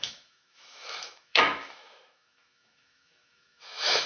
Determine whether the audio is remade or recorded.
remade